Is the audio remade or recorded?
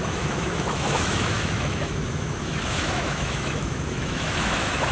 remade